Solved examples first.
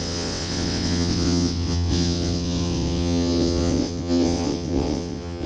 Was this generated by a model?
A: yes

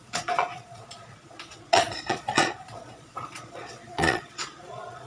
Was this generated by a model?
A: yes